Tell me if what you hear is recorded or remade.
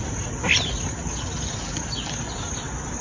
recorded